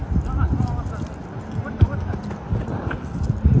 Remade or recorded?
recorded